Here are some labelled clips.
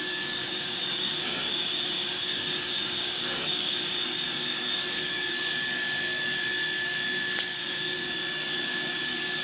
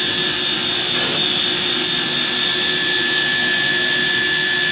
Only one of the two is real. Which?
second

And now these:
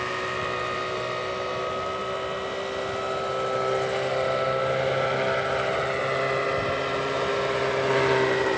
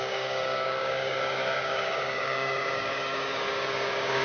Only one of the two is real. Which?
first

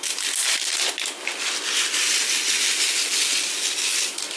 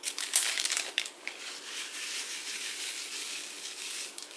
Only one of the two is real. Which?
first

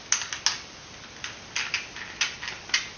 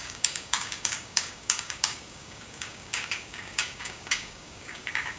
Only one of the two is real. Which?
first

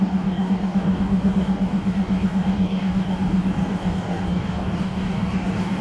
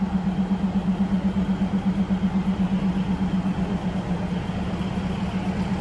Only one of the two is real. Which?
second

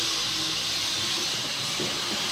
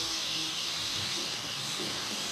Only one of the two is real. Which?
first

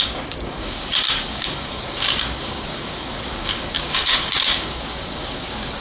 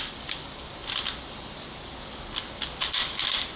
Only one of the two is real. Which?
second